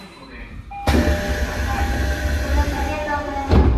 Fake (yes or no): no